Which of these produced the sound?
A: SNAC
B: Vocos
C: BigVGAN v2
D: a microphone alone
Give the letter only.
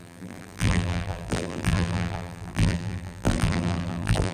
C